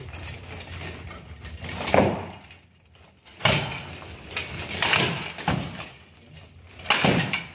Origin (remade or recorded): recorded